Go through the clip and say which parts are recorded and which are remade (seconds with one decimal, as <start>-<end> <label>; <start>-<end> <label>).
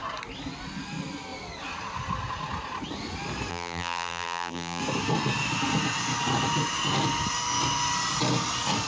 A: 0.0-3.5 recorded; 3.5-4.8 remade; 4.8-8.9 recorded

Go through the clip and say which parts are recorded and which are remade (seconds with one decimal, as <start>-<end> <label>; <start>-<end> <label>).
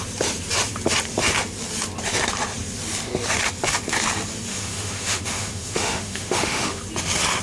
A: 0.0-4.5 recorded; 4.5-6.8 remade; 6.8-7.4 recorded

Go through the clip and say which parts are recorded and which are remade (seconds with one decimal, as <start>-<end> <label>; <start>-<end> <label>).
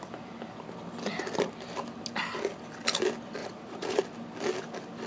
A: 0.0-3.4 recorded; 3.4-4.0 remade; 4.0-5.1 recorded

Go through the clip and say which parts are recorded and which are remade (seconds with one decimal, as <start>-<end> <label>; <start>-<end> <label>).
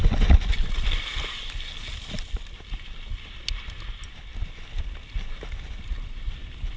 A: 0.0-6.8 recorded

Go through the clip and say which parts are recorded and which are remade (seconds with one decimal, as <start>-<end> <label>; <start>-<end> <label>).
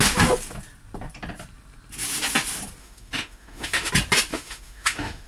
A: 0.0-2.8 recorded; 2.8-3.9 remade; 3.9-4.3 recorded; 4.3-5.3 remade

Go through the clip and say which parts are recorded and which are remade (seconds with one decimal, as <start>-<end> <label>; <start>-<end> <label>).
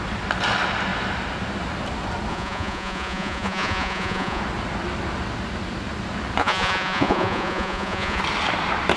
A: 0.0-2.3 recorded; 2.3-4.4 remade; 4.4-6.4 recorded; 6.4-8.2 remade; 8.2-9.0 recorded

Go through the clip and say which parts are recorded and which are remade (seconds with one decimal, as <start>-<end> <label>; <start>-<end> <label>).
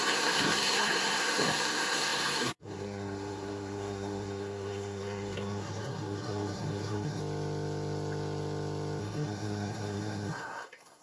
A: 0.0-7.2 remade; 7.2-9.0 recorded; 9.0-11.0 remade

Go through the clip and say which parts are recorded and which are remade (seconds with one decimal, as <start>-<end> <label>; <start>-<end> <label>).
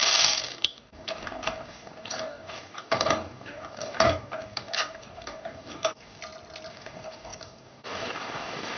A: 0.0-6.2 remade; 6.2-6.7 recorded; 6.7-8.8 remade